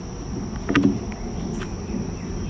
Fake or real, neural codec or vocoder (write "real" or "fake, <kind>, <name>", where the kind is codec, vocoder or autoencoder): real